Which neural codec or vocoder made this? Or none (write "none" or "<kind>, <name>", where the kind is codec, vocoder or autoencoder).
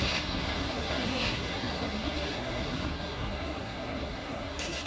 codec, SNAC